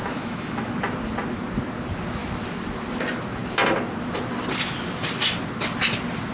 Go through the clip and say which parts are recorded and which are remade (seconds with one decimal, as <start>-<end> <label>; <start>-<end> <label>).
0.0-0.7 remade; 0.7-6.3 recorded